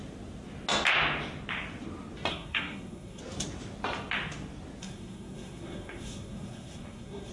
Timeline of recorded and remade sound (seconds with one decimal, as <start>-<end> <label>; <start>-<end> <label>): 0.0-2.3 recorded; 2.3-3.2 remade; 3.2-4.8 recorded; 4.8-7.3 remade